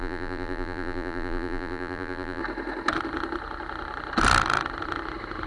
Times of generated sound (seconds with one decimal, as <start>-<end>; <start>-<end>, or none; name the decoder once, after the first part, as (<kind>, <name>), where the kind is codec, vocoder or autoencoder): 0.0-2.4 (vocoder, BigVGAN v2)